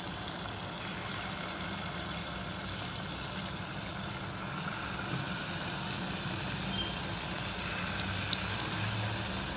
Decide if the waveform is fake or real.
real